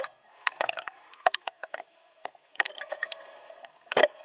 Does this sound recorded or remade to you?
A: remade